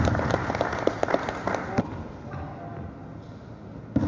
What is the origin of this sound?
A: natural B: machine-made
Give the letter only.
A